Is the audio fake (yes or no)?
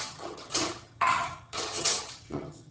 yes